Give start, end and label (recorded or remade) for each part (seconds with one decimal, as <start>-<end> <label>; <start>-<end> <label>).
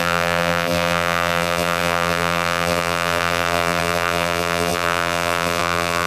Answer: 0.0-6.1 remade